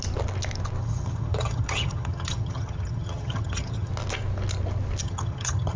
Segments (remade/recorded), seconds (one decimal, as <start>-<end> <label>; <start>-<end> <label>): 0.0-0.8 recorded; 0.8-3.9 remade; 3.9-5.0 recorded; 5.0-5.8 remade